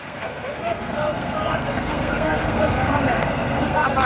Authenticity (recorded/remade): remade